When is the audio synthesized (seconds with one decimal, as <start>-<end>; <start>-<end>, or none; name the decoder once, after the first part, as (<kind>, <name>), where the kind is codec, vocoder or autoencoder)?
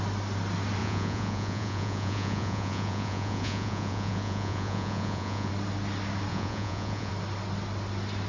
0.8-5.5 (vocoder, Vocos); 6.3-7.1